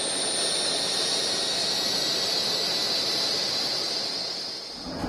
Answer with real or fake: real